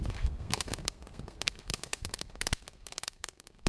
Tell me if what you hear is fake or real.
fake